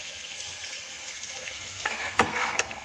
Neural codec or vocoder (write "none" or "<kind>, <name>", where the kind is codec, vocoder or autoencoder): codec, SNAC